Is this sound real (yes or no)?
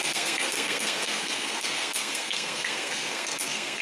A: no